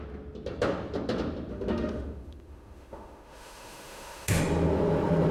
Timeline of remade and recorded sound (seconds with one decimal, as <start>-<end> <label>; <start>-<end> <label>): 0.0-1.5 recorded; 1.5-4.4 remade; 4.4-5.3 recorded